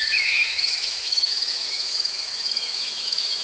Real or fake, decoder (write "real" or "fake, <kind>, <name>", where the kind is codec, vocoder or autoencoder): fake, autoencoder, DAC-VAE